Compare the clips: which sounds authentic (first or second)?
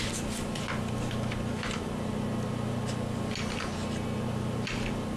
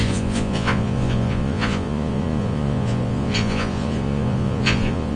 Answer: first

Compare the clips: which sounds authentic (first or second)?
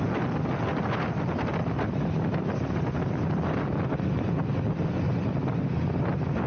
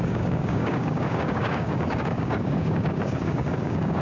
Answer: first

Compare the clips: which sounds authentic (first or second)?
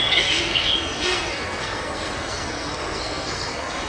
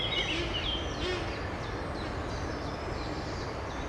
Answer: second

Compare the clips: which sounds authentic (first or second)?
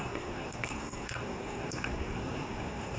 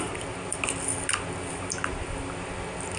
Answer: second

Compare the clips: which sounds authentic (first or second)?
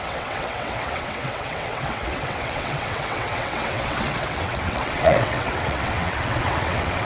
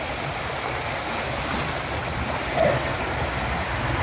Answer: second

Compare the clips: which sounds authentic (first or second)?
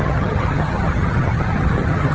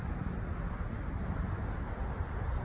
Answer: second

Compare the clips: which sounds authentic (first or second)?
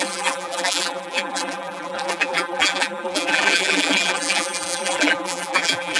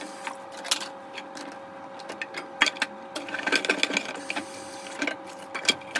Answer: second